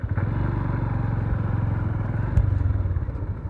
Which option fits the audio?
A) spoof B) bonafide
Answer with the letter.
B